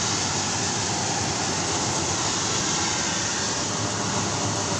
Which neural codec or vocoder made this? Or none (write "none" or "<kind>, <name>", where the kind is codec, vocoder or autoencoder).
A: none